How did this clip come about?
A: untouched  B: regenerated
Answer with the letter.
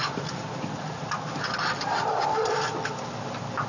A